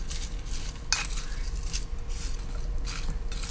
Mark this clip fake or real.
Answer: real